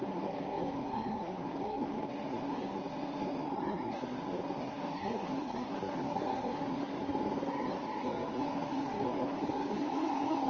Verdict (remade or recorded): remade